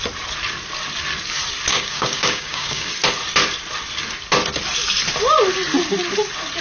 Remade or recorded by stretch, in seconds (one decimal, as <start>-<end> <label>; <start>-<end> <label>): 0.0-1.7 recorded; 1.7-2.9 remade; 2.9-6.6 recorded